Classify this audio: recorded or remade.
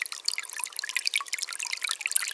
recorded